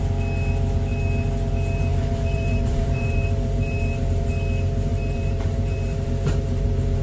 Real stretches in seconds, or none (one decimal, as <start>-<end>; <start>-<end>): 0.0-1.9; 4.3-4.9